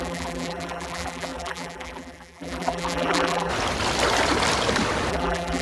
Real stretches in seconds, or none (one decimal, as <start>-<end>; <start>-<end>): 3.5-5.1